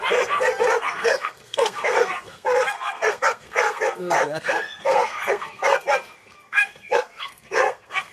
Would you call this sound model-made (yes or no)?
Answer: yes